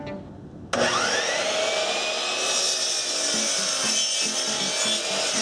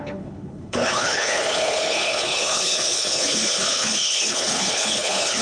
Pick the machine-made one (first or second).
second